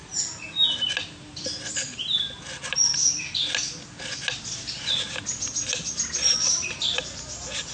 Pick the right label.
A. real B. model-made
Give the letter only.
A